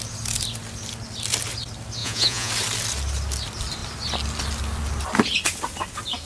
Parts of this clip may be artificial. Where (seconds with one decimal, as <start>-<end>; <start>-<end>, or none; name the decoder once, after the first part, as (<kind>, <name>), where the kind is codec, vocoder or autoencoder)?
2.0-2.5 (vocoder, Vocos)